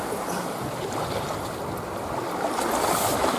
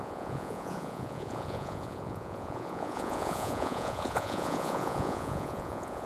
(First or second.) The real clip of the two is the first